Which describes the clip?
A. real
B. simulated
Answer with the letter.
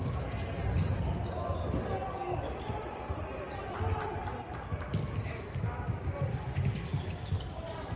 A